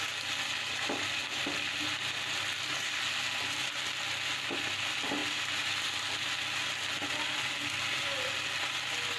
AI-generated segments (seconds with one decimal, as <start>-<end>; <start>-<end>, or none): none